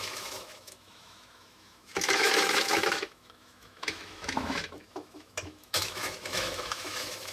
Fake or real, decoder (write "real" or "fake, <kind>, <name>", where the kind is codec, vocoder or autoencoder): fake, autoencoder, DAC-VAE